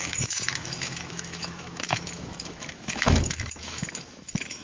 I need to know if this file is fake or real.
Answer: fake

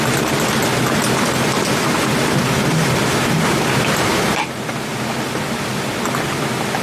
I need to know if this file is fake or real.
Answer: real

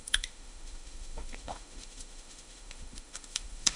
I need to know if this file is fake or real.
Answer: fake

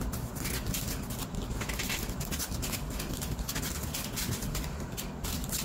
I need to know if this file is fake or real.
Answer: real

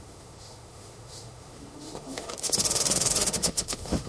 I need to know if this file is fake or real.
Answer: fake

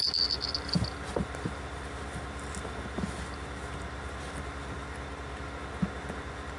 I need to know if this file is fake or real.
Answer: real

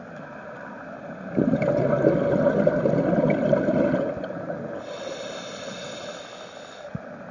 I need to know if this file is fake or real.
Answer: real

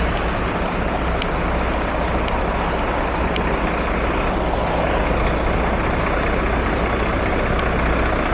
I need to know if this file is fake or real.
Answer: real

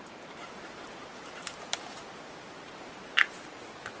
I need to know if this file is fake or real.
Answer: real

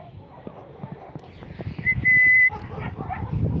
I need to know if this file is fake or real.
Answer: real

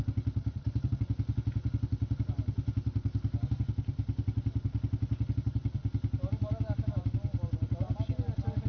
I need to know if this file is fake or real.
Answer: real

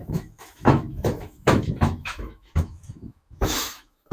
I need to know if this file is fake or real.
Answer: fake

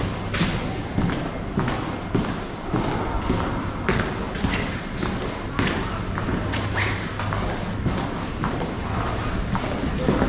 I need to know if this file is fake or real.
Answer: real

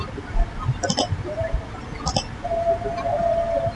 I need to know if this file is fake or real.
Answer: real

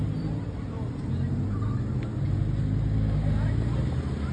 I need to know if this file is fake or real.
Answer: real